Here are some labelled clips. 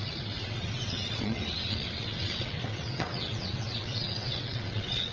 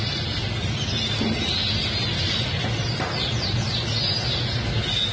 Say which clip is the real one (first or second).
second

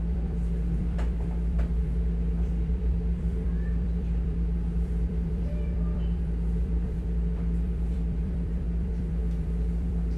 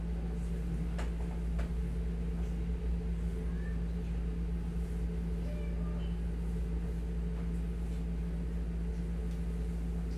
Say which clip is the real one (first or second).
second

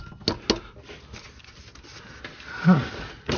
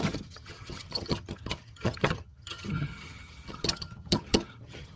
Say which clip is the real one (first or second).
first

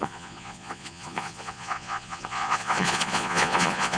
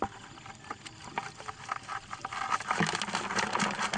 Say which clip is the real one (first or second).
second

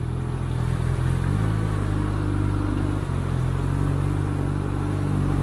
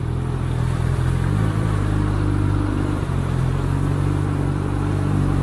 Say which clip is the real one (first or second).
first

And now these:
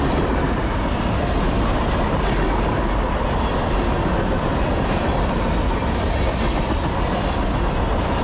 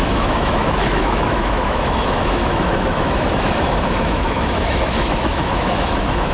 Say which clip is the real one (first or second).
first